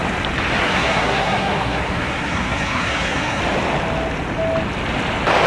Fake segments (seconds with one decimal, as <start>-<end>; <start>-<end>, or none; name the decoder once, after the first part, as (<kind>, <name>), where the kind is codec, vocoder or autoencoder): 0.6-3.4 (codec, SNAC)